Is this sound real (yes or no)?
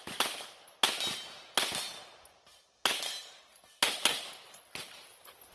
yes